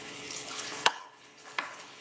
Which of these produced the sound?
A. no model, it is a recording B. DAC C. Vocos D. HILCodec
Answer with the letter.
D